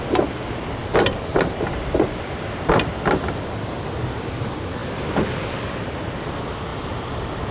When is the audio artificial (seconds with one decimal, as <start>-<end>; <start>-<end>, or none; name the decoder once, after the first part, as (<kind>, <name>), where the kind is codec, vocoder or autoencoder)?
none